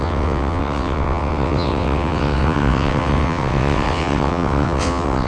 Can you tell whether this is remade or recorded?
remade